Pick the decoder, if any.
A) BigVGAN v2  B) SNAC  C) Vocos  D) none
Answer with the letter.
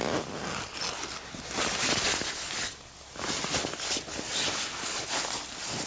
D